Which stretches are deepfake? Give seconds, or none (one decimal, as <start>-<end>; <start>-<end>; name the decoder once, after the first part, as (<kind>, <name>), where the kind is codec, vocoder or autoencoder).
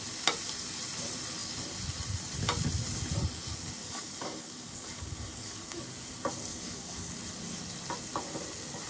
3.8-5.8 (codec, DAC); 6.5-7.1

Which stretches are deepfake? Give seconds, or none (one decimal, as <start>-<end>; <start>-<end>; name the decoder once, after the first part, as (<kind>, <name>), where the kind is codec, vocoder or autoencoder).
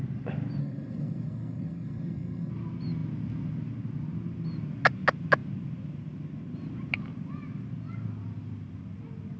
0.6-2.5 (codec, SNAC)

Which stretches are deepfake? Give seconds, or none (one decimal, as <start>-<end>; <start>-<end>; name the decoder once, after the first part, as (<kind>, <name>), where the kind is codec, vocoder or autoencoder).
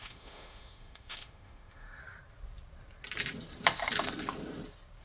0.0-2.0 (autoencoder, DAC-VAE)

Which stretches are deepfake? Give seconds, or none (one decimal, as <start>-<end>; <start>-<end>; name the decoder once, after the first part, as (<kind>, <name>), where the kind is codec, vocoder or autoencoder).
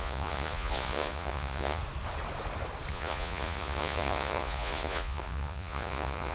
0.0-1.8 (vocoder, Vocos); 2.9-6.3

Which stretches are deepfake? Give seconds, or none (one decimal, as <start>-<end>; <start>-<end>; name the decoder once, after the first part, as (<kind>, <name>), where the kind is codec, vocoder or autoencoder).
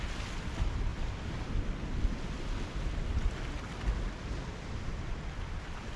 none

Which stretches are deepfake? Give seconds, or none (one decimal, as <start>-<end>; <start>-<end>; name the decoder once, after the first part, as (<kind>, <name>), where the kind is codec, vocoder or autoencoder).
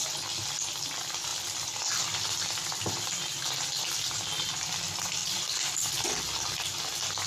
1.3-2.9 (vocoder, BigVGAN v2); 5.2-5.9